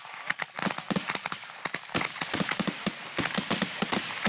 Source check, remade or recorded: recorded